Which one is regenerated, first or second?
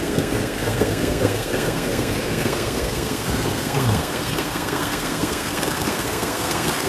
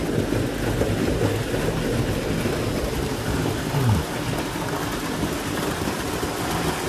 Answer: first